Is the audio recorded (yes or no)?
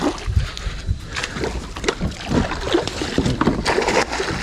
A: yes